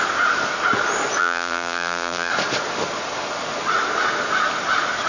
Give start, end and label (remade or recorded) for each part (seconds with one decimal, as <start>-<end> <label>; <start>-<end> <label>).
0.0-1.2 recorded; 1.2-2.3 remade; 2.3-5.1 recorded